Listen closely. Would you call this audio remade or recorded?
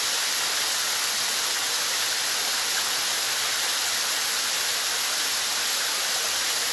recorded